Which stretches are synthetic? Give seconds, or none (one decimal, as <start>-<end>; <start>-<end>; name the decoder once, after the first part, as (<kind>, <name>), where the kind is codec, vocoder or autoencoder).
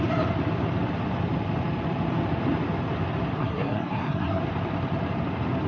3.4-4.4 (codec, SNAC)